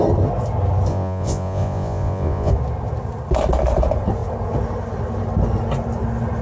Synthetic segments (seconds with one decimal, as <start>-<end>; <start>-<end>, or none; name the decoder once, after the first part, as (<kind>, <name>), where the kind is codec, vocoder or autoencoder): 0.9-2.5 (vocoder, Vocos)